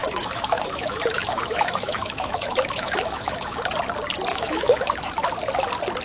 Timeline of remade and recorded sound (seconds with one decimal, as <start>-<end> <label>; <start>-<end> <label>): 0.0-3.6 remade; 3.6-4.3 recorded; 4.3-5.1 remade; 5.1-6.0 recorded